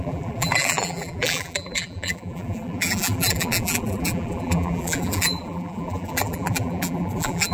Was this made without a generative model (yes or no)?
no